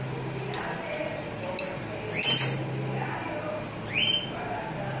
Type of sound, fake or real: real